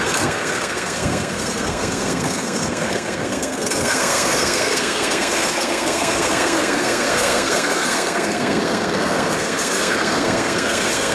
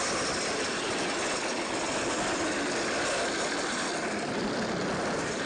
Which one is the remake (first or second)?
first